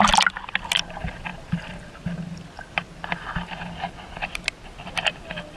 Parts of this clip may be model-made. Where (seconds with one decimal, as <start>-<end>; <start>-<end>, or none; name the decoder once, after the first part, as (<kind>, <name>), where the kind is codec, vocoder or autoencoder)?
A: none